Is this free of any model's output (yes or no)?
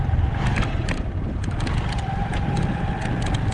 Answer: yes